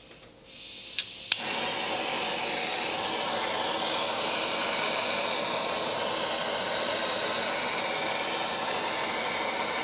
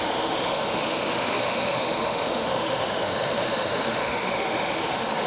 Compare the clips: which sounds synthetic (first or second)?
second